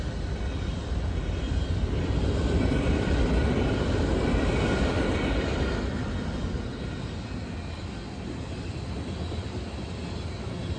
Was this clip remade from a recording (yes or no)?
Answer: no